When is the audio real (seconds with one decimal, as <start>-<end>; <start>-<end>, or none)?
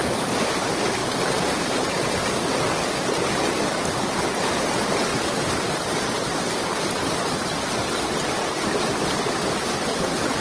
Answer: 0.0-1.0; 2.6-5.1; 6.0-10.4